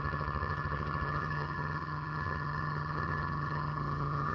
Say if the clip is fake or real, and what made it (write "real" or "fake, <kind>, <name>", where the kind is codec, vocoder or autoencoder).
fake, vocoder, HiFi-GAN